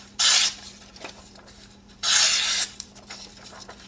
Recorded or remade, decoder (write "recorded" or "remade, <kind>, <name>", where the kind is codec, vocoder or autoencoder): remade, vocoder, BigVGAN v2